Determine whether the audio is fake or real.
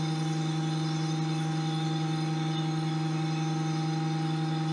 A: real